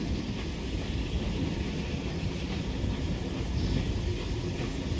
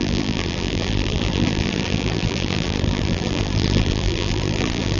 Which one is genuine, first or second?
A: first